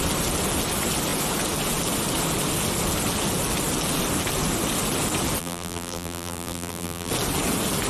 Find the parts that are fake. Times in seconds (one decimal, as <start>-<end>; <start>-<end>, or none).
5.4-7.1